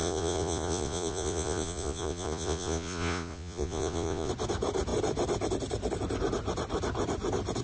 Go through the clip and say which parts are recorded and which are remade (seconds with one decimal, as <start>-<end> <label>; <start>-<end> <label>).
0.0-4.3 remade; 4.3-7.6 recorded